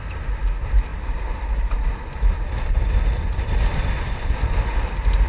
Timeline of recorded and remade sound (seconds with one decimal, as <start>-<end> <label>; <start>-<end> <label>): 0.0-5.3 recorded